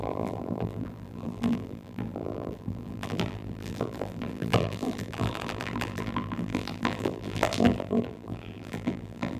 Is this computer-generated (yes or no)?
yes